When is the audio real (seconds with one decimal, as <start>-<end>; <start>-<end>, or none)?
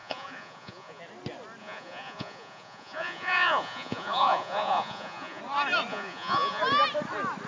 1.0-1.6; 5.4-5.9; 6.6-7.5